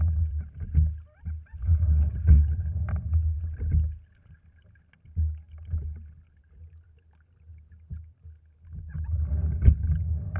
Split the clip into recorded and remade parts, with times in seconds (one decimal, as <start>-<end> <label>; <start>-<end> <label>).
0.0-1.6 recorded; 1.6-2.1 remade; 2.1-10.4 recorded